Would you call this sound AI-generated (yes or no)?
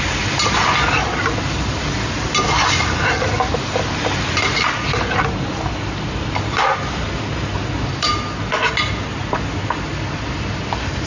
no